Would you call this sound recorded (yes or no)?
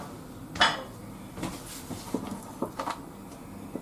yes